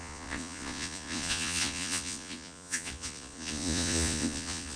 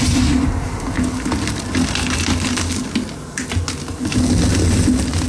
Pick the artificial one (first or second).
first